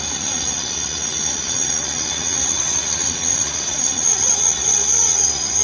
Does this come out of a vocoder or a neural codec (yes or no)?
yes